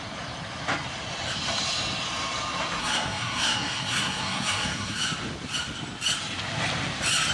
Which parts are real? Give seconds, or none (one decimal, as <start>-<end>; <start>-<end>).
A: 0.0-2.8; 5.0-7.3